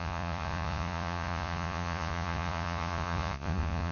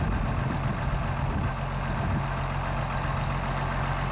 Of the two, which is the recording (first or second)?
second